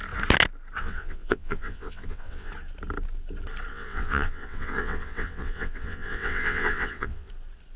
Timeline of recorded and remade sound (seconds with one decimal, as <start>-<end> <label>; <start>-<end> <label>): 0.0-0.8 recorded; 0.8-2.5 remade; 2.5-3.7 recorded; 3.7-7.3 remade; 7.3-7.8 recorded